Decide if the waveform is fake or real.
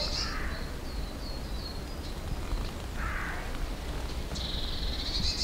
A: fake